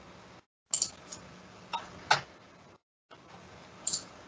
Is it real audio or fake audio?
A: real